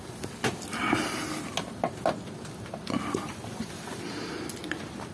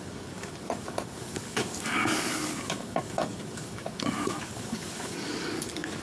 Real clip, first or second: first